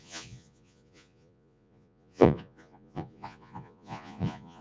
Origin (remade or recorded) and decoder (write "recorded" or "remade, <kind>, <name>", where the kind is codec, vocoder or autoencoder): remade, vocoder, Vocos